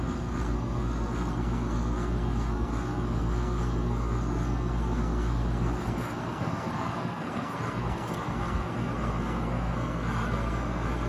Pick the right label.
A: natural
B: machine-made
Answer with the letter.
B